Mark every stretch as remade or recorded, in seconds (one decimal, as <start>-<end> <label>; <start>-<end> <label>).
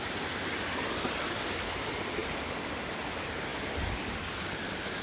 0.0-3.5 recorded; 3.5-5.0 remade